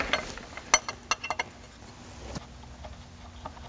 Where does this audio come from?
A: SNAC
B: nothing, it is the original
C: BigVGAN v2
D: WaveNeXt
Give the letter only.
B